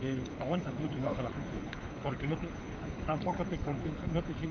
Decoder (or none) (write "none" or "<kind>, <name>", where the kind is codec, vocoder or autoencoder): codec, HILCodec